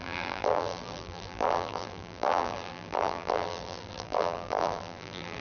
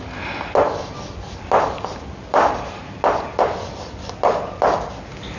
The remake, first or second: first